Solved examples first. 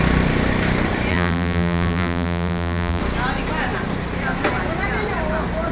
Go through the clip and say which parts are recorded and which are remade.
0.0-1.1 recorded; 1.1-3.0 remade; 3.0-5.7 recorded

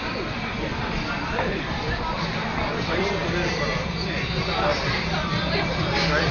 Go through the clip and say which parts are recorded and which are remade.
0.0-6.3 remade